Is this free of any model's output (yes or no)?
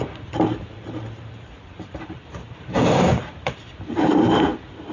no